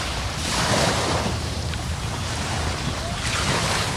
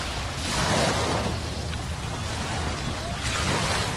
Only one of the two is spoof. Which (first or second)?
first